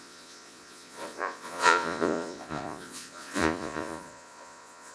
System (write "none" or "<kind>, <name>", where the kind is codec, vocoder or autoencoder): vocoder, Vocos